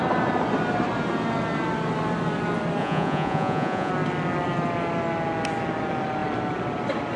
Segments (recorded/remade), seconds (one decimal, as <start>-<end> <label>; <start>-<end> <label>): 0.0-2.8 recorded; 2.8-3.9 remade; 3.9-7.2 recorded